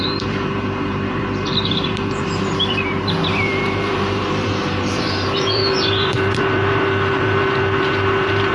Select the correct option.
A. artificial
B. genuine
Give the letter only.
A